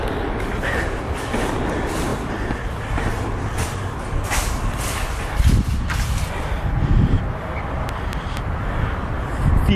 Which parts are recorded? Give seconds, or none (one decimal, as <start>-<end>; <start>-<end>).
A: 0.0-9.8